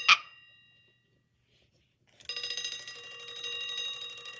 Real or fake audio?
real